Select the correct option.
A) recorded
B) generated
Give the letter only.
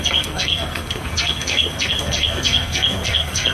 B